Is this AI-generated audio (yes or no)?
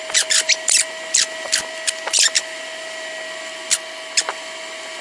no